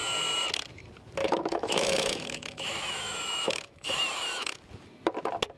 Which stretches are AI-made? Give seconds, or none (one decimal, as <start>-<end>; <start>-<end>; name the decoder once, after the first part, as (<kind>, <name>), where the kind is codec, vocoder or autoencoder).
1.2-4.6 (autoencoder, DAC-VAE)